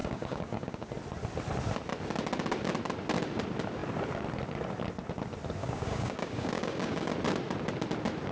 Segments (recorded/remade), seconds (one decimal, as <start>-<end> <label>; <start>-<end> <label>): 0.0-0.9 remade; 0.9-5.6 recorded; 5.6-7.1 remade; 7.1-8.3 recorded